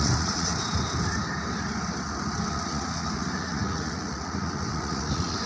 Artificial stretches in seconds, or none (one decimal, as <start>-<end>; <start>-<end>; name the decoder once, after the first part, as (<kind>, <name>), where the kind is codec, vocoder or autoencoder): 0.0-0.5 (vocoder, Vocos); 2.5-5.5